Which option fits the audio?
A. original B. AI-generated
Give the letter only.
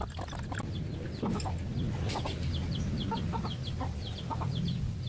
A